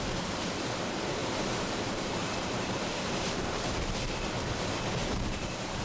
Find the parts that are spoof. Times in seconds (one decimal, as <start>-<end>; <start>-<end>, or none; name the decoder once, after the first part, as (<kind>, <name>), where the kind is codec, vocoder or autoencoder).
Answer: 1.2-3.6 (vocoder, BigVGAN v2); 5.0-5.8

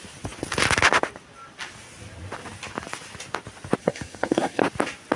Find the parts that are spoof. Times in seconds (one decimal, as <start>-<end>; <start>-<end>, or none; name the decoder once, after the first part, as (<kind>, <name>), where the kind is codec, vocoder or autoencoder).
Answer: 3.8-4.6 (codec, SNAC)